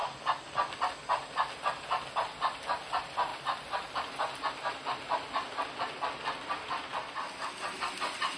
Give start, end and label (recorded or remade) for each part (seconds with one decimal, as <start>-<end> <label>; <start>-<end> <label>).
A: 0.0-8.4 recorded